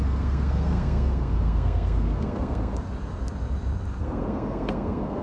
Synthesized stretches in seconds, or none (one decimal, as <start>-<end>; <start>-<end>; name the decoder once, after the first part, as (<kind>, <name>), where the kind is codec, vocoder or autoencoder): 0.0-2.7 (codec, SNAC); 4.0-5.2